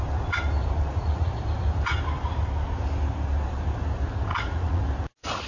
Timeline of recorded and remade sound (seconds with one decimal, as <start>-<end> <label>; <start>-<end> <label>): 0.0-0.9 recorded; 0.9-1.4 remade; 1.4-4.3 recorded; 4.3-4.8 remade; 4.8-5.5 recorded